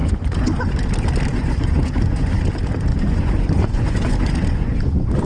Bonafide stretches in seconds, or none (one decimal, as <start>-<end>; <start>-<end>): 0.7-1.3; 2.3-2.9